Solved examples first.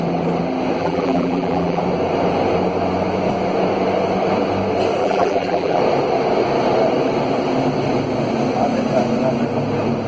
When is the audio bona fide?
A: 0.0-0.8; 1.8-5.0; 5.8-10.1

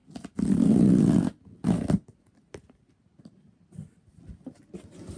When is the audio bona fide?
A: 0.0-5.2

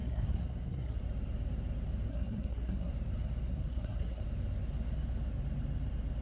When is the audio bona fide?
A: 1.0-2.1; 2.9-3.5; 4.2-6.2